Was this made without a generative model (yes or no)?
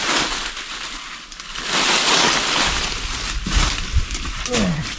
yes